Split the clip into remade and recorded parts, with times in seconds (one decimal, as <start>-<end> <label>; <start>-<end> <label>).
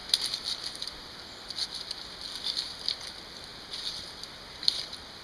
0.0-5.2 recorded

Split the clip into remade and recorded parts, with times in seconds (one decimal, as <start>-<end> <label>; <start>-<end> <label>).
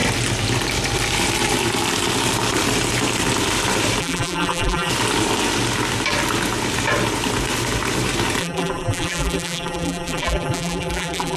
0.0-4.0 recorded; 4.0-4.9 remade; 4.9-8.4 recorded; 8.4-11.4 remade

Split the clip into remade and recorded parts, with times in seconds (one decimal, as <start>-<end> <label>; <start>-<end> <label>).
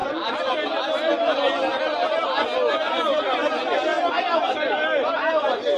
0.0-3.9 recorded; 3.9-5.8 remade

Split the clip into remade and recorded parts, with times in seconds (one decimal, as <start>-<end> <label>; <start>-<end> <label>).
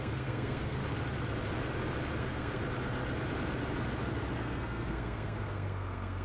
0.0-0.8 remade; 0.8-2.2 recorded; 2.2-2.6 remade; 2.6-4.4 recorded; 4.4-6.2 remade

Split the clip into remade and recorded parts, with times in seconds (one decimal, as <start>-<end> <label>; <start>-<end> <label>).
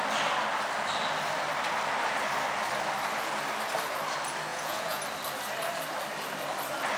0.0-4.5 recorded; 4.5-5.0 remade; 5.0-7.0 recorded